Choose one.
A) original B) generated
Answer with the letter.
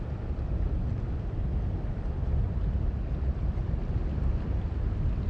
A